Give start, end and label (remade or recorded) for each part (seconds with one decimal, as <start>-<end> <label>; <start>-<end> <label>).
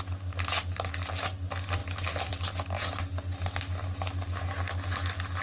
0.0-5.4 recorded